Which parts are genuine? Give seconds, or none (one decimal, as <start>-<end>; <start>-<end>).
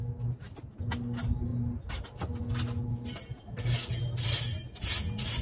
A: 0.0-5.4